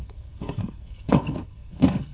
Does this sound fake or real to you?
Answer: fake